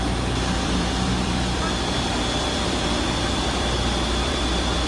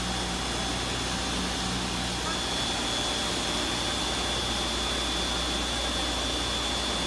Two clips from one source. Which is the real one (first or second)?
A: second